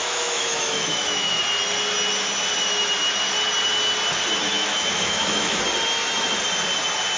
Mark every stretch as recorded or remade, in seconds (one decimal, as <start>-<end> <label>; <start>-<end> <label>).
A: 0.0-1.4 remade; 1.4-4.4 recorded; 4.4-5.6 remade; 5.6-7.2 recorded